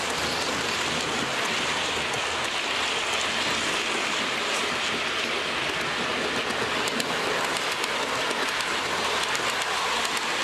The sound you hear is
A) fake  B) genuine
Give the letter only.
B